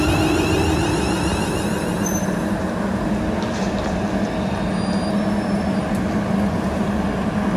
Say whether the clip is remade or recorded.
recorded